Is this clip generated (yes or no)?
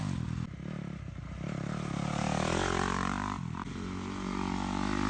no